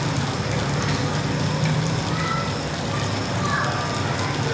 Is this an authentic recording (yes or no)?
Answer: yes